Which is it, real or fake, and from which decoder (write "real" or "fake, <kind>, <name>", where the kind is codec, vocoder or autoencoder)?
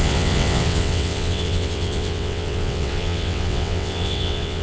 fake, vocoder, WaveNeXt